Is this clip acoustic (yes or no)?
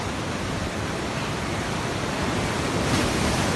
yes